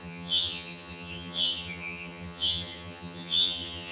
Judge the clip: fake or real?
fake